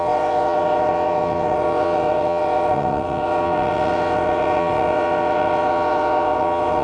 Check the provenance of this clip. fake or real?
fake